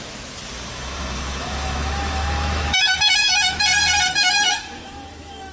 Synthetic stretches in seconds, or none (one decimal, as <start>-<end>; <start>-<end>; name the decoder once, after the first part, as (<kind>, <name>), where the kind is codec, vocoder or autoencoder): 0.7-3.6 (autoencoder, DAC-VAE); 4.1-5.5